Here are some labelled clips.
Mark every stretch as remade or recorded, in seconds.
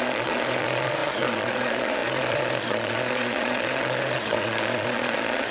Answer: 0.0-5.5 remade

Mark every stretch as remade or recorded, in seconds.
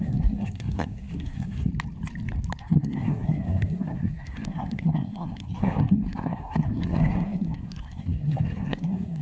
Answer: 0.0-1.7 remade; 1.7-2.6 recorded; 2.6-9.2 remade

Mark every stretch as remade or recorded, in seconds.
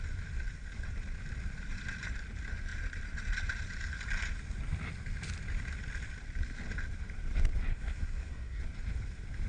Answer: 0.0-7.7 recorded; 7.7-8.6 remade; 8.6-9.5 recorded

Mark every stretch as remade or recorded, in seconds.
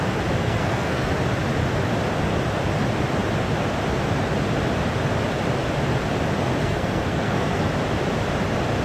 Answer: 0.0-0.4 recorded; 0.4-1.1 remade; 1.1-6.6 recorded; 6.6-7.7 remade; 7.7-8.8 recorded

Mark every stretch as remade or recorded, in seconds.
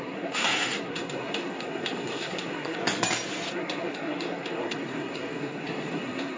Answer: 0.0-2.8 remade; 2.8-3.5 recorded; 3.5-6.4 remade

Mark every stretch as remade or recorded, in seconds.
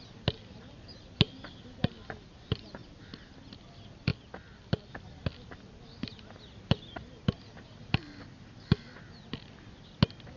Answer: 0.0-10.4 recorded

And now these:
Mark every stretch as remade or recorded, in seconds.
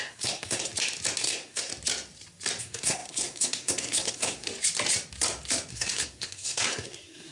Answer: 0.0-0.7 remade; 0.7-1.2 recorded; 1.2-1.7 remade; 1.7-2.6 recorded; 2.6-4.5 remade; 4.5-5.7 recorded; 5.7-7.3 remade